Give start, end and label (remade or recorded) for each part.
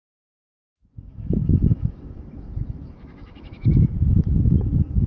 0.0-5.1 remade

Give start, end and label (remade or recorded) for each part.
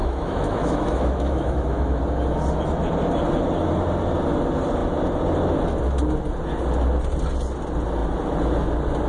0.0-2.0 remade; 2.0-9.1 recorded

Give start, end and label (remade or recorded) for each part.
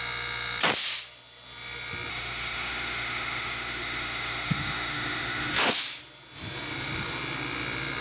0.0-2.1 recorded; 2.1-5.7 remade; 5.7-8.0 recorded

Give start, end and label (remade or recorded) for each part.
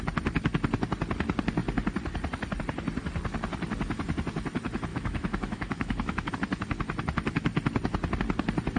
0.0-4.9 recorded; 4.9-6.3 remade; 6.3-8.8 recorded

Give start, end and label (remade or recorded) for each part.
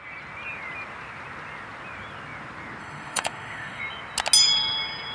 0.0-2.8 recorded; 2.8-3.8 remade; 3.8-5.1 recorded